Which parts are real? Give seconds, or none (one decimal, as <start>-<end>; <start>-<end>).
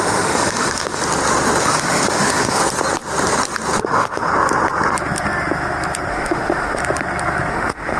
1.0-1.6; 2.6-3.8; 4.3-6.1; 6.8-7.5